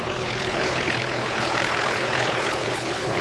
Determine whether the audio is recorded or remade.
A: remade